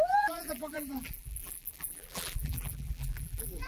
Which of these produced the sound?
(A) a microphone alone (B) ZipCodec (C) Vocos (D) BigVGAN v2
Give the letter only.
D